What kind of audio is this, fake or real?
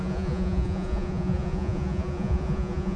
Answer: fake